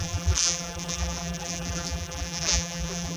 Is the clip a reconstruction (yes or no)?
yes